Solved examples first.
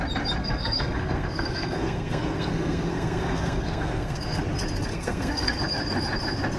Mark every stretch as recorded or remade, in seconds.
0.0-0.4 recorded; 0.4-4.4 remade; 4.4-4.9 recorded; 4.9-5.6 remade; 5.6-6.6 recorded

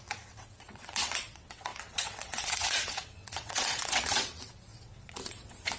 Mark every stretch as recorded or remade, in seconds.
0.0-5.8 remade

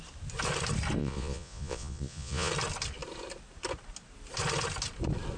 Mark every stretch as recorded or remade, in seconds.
0.0-1.0 recorded; 1.0-2.5 remade; 2.5-5.4 recorded

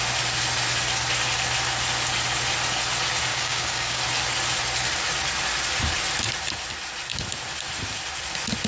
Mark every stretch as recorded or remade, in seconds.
0.0-3.3 recorded; 3.3-4.0 remade; 4.0-8.7 recorded

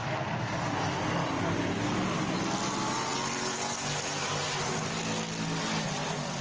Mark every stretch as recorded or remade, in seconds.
0.0-6.4 recorded

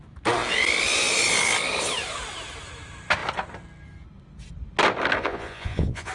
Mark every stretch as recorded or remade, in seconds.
0.0-5.2 recorded; 5.2-6.1 remade